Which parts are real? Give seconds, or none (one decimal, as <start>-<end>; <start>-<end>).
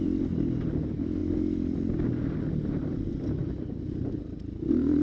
0.0-5.0